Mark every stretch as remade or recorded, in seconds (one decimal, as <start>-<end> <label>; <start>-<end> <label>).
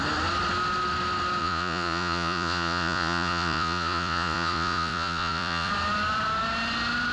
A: 0.0-1.4 recorded; 1.4-5.7 remade; 5.7-7.1 recorded